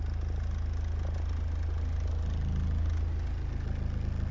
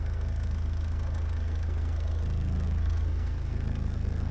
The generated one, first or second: second